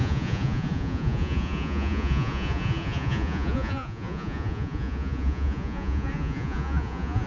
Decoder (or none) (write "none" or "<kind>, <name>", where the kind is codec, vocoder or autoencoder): vocoder, Vocos